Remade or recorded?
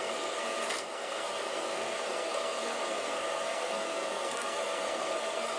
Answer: remade